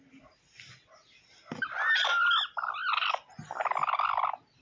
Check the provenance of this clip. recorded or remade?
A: recorded